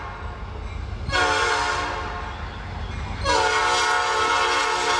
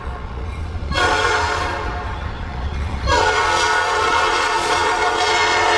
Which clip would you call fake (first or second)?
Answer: second